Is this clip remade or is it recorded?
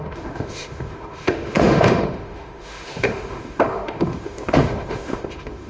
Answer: remade